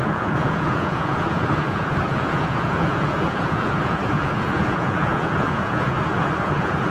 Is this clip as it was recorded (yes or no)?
no